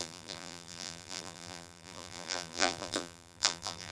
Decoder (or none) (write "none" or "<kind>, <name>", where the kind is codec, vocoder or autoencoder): vocoder, BigVGAN v2